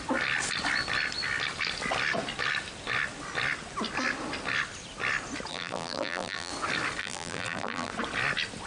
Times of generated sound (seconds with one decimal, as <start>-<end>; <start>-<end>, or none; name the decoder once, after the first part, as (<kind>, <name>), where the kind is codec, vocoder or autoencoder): 5.5-6.5 (vocoder, BigVGAN v2); 7.0-7.9